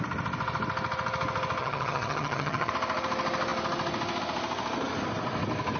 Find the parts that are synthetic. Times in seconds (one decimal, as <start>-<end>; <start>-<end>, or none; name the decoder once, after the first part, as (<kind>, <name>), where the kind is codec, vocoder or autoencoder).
1.6-2.7 (vocoder, HiFi-GAN)